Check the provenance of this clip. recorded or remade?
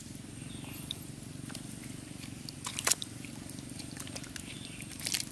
recorded